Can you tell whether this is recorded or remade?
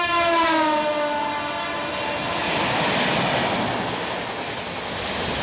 recorded